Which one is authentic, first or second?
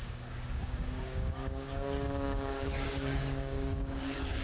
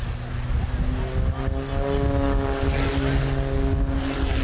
second